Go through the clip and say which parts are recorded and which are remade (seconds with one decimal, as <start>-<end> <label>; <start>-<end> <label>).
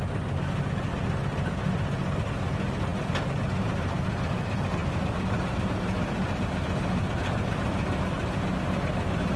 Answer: 0.0-9.4 recorded